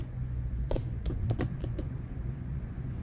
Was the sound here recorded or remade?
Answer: remade